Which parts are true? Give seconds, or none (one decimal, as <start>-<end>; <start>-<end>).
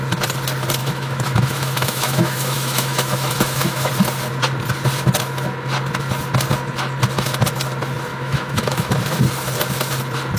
0.0-0.8; 3.9-8.1; 8.9-10.4